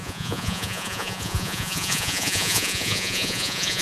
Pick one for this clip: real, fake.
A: fake